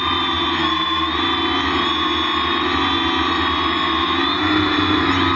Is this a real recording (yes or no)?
yes